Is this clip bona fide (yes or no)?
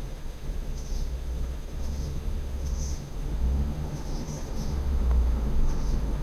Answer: no